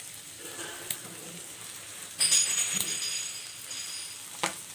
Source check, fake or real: real